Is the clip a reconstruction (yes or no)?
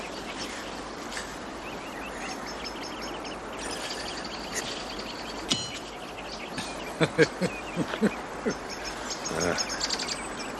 no